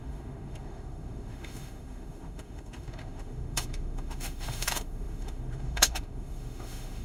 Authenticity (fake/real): fake